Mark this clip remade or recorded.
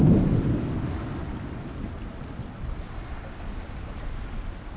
recorded